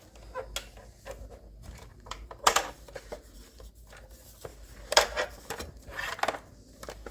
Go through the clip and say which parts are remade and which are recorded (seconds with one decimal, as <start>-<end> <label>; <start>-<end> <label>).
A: 0.0-1.9 recorded; 1.9-3.7 remade; 3.7-4.5 recorded; 4.5-6.1 remade; 6.1-7.1 recorded